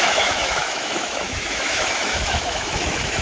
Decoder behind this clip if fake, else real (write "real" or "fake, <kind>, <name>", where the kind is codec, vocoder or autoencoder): fake, autoencoder, DAC-VAE